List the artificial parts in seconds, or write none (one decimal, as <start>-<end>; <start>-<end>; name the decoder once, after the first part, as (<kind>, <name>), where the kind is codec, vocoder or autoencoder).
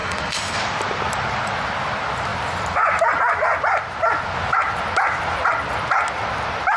0.0-0.6 (codec, SNAC)